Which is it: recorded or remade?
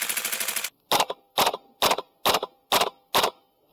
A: recorded